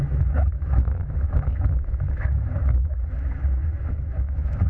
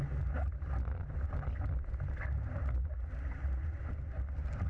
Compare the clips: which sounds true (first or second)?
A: second